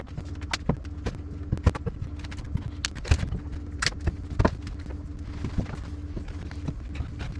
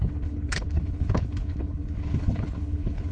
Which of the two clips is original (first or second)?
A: first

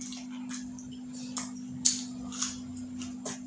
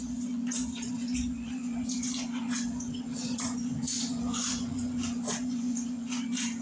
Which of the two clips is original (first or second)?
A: first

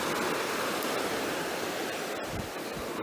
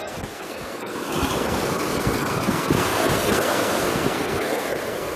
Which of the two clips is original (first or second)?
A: first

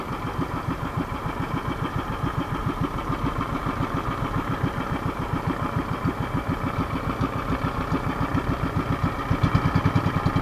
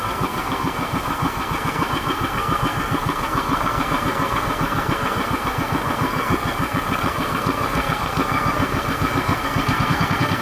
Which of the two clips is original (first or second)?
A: first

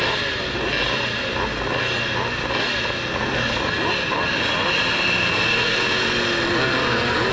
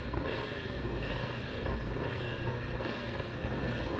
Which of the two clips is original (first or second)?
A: first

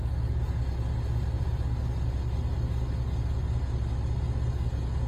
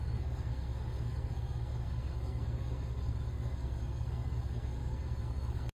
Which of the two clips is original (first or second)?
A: first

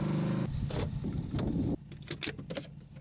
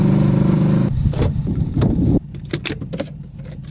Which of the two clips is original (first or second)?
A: first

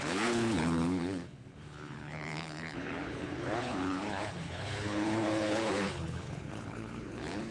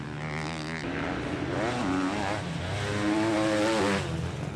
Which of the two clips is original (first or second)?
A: second